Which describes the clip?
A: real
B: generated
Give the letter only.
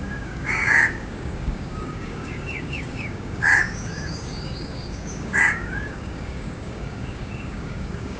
B